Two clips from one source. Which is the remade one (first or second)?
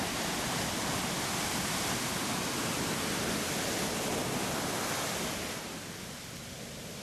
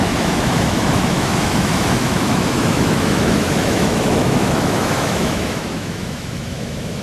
second